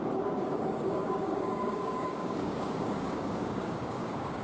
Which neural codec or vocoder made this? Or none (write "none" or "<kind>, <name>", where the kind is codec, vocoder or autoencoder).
codec, DAC